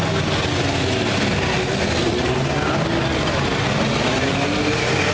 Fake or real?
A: real